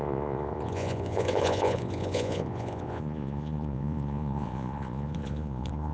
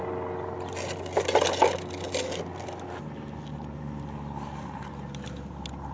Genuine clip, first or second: second